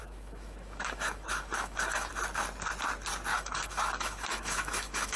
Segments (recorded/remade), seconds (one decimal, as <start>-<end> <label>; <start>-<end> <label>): 0.0-2.1 remade; 2.1-3.3 recorded; 3.3-5.2 remade